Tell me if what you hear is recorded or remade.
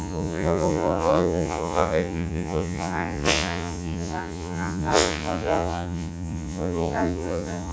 remade